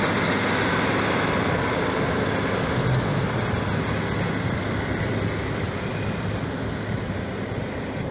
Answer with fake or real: real